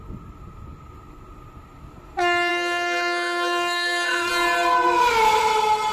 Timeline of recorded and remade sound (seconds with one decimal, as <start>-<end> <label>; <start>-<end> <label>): 0.0-2.5 recorded; 2.5-4.3 remade; 4.3-5.9 recorded